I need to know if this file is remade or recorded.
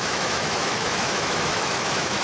remade